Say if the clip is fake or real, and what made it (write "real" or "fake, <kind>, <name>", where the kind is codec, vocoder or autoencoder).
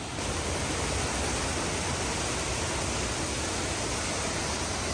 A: real